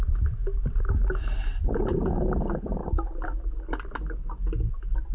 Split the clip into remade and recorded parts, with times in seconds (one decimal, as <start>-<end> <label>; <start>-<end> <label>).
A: 0.0-5.1 recorded

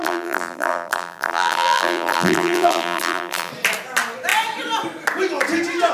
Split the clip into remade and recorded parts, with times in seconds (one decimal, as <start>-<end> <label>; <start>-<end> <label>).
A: 0.0-3.5 remade; 3.5-5.9 recorded

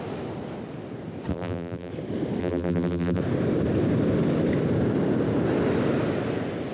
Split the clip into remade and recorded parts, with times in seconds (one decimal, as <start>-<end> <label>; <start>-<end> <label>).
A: 0.0-1.3 recorded; 1.3-1.9 remade; 1.9-2.4 recorded; 2.4-3.2 remade; 3.2-6.7 recorded

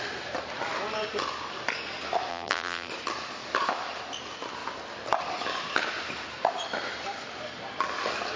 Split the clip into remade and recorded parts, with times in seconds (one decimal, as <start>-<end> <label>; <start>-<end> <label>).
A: 0.0-2.3 recorded; 2.3-2.9 remade; 2.9-8.4 recorded

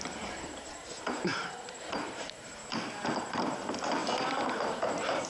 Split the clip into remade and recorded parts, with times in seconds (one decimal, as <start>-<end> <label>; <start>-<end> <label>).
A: 0.0-2.6 remade; 2.6-3.2 recorded; 3.2-4.0 remade; 4.0-4.5 recorded; 4.5-5.3 remade

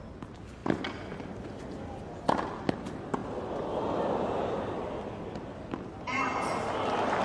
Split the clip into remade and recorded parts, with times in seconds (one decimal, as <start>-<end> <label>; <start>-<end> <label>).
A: 0.0-7.2 recorded